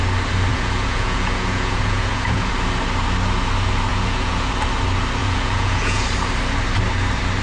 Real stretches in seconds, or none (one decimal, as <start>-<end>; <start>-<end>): 0.0-0.5; 2.5-3.9; 4.5-5.2; 6.0-7.4